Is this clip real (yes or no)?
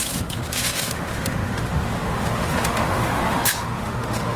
no